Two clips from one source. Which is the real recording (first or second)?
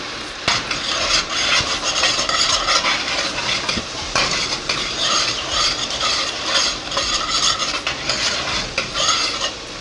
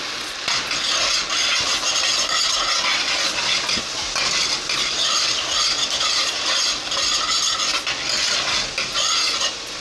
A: second